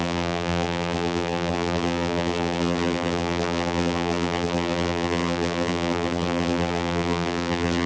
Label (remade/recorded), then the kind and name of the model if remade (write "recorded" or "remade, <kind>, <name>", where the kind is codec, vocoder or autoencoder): remade, vocoder, BigVGAN v2